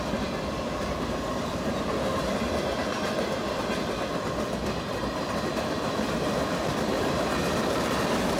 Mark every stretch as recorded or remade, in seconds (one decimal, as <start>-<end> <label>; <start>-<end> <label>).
0.0-2.8 remade; 2.8-4.2 recorded; 4.2-8.4 remade

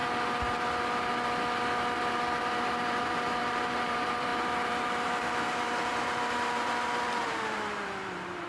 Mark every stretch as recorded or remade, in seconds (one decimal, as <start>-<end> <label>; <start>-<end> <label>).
0.0-2.4 recorded; 2.4-8.5 remade

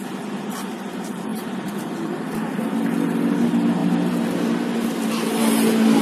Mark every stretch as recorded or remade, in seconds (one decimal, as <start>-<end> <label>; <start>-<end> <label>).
0.0-1.3 recorded; 1.3-2.0 remade; 2.0-3.8 recorded; 3.8-5.4 remade; 5.4-6.0 recorded

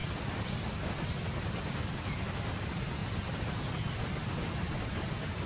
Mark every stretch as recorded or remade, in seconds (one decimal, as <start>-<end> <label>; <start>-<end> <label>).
0.0-2.5 recorded; 2.5-3.0 remade; 3.0-4.0 recorded; 4.0-5.5 remade